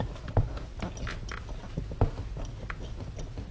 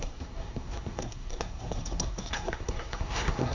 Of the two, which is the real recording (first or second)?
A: first